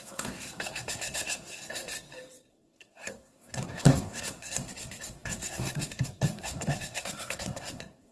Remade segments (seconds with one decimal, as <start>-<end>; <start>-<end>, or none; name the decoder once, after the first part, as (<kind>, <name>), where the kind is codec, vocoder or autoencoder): 0.0-1.9 (codec, SNAC); 2.5-8.1